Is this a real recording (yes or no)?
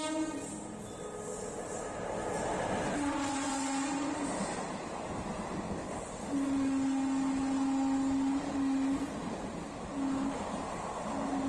yes